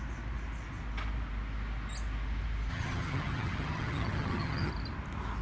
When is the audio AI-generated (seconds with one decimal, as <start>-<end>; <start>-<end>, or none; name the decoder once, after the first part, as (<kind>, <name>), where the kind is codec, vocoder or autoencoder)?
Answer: 2.7-4.7 (vocoder, HiFi-GAN)